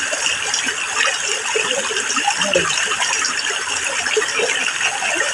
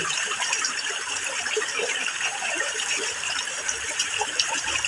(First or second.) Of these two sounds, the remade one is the second